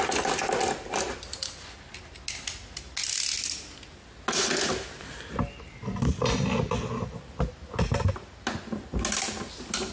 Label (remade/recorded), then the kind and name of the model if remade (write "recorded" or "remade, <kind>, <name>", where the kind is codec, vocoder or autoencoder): recorded